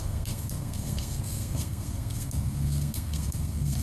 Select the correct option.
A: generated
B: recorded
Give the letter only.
A